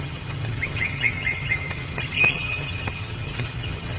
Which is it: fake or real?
fake